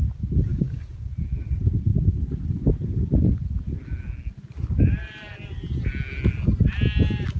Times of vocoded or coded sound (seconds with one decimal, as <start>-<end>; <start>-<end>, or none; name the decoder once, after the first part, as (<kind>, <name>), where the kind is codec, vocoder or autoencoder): 0.5-1.1 (codec, DAC)